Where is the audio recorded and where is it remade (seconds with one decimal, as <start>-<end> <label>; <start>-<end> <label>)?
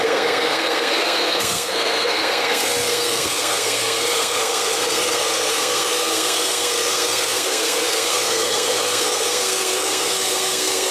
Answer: 0.0-10.9 remade